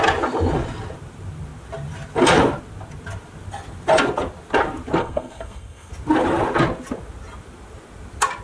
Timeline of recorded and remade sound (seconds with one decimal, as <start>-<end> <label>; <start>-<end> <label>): 0.0-5.0 recorded; 5.0-5.9 remade; 5.9-8.4 recorded